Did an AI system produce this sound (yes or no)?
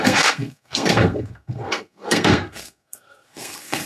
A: yes